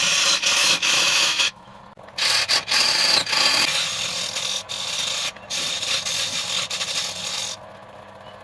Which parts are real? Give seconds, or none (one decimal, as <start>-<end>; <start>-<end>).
0.0-0.6; 1.8-8.4